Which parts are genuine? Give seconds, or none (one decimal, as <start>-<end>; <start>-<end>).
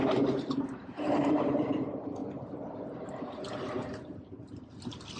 0.0-5.2